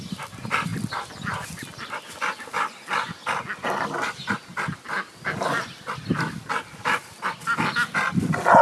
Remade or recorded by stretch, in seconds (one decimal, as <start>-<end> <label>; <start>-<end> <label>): 0.0-8.6 recorded